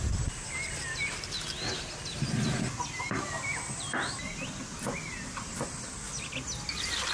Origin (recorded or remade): recorded